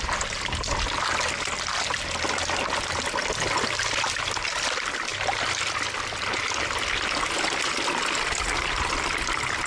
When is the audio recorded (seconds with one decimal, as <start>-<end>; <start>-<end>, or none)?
0.0-9.7